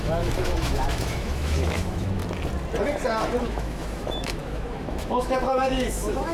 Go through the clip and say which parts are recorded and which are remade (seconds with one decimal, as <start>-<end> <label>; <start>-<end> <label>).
0.0-2.2 remade; 2.2-3.4 recorded; 3.4-6.3 remade